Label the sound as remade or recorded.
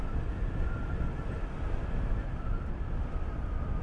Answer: recorded